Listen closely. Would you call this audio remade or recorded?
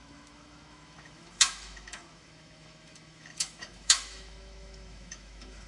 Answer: remade